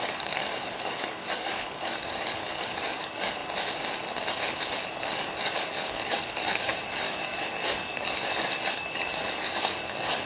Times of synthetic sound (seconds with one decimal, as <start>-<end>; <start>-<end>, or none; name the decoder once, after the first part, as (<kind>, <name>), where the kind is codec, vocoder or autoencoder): 0.0-3.4 (codec, DAC); 5.2-10.3